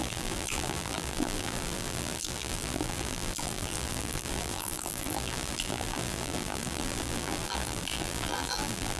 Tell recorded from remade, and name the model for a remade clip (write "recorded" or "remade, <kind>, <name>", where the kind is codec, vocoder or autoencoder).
remade, vocoder, BigVGAN v2